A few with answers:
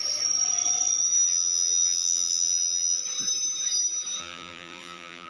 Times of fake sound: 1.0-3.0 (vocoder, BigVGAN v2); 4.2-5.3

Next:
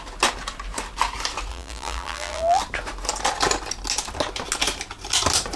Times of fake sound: 1.5-2.6 (vocoder, BigVGAN v2)

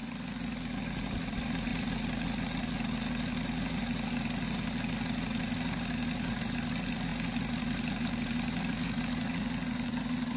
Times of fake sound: 0.0-0.6 (vocoder, BigVGAN v2)

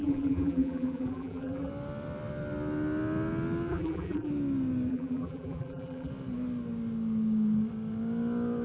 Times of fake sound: 0.0-1.7 (vocoder, BigVGAN v2); 3.7-4.3; 4.9-6.1